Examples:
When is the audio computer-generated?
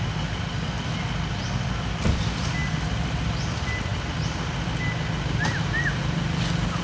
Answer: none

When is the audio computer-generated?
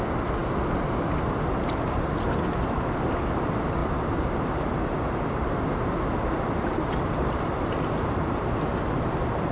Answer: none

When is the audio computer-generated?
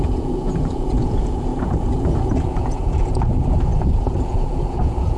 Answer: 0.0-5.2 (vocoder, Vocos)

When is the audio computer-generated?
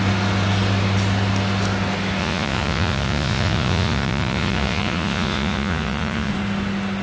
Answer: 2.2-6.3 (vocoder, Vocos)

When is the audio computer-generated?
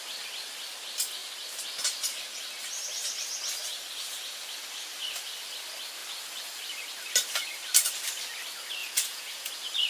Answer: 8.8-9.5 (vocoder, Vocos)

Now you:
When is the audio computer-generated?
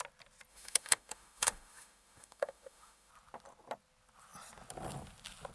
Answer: 0.5-3.1 (autoencoder, DAC-VAE)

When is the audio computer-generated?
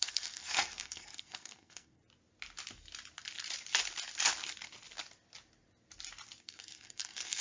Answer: 0.0-2.0 (codec, SNAC); 6.4-7.4